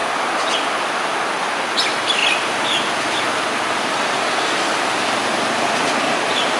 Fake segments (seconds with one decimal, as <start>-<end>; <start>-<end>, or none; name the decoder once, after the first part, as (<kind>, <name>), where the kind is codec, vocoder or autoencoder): 0.6-2.2 (vocoder, BigVGAN v2); 6.0-6.6